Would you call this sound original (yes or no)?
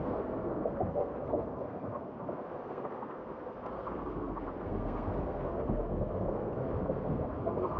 no